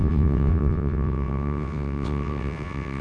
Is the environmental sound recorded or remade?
remade